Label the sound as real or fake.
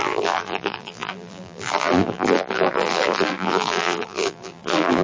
fake